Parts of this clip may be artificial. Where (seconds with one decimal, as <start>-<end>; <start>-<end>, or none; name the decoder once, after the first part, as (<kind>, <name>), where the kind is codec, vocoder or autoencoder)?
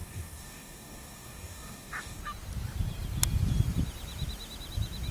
0.0-2.2 (codec, DAC)